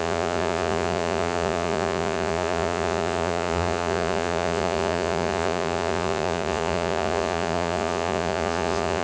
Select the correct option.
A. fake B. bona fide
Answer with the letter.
A